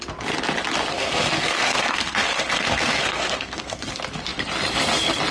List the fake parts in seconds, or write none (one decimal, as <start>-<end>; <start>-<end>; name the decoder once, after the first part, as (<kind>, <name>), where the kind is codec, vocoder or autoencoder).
0.9-3.9 (codec, SNAC)